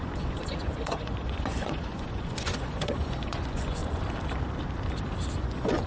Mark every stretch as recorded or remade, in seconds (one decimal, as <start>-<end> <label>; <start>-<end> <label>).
0.0-3.8 remade; 3.8-5.4 recorded; 5.4-5.9 remade